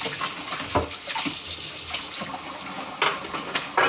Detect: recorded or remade recorded